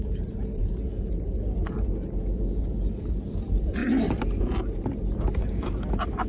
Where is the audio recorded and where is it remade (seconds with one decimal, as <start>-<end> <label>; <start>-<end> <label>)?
0.0-0.6 remade; 0.6-2.6 recorded; 2.6-6.3 remade